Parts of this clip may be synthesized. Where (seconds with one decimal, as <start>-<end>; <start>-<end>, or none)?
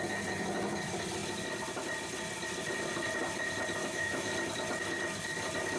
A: 3.8-4.3